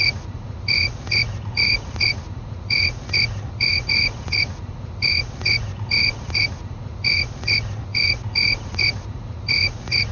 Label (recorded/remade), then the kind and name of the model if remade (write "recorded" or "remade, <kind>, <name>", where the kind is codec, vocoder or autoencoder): remade, vocoder, Vocos